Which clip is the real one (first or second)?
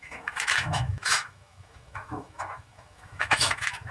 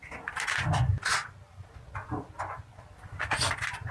second